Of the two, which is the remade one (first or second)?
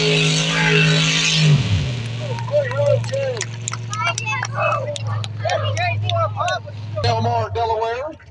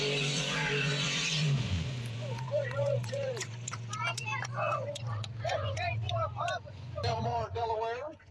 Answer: second